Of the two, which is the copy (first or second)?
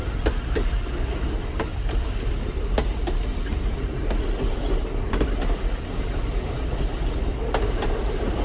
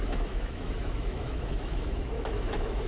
second